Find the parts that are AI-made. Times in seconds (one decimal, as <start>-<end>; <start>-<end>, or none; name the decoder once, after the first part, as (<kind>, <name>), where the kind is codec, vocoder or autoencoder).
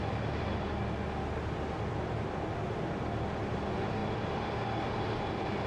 none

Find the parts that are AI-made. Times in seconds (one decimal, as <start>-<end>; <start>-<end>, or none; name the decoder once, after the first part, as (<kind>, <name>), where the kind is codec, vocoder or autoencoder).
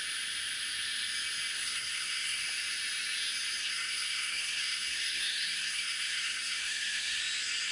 1.5-2.4 (codec, SNAC); 3.6-7.2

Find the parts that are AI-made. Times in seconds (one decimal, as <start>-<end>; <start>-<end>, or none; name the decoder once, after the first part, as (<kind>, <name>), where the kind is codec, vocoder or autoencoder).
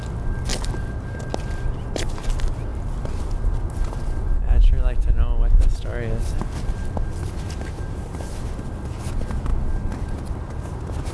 none